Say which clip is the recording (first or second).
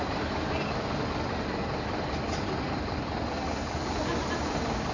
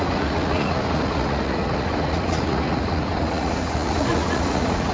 first